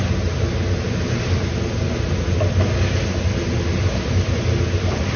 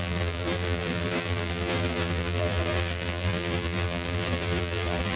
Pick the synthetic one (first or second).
second